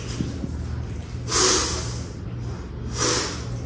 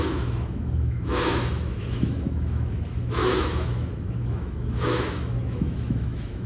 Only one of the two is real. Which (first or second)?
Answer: first